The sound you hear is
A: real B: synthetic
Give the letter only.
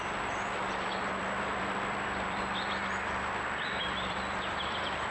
B